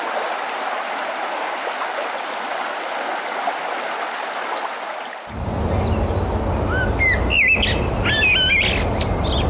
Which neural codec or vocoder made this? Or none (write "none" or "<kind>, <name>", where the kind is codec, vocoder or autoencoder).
none